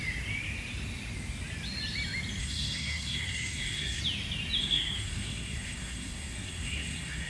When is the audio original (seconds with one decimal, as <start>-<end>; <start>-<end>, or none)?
0.0-2.4; 4.0-4.6